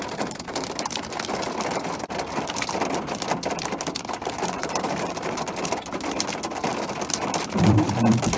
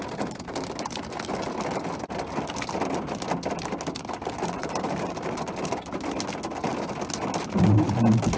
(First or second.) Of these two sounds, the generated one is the first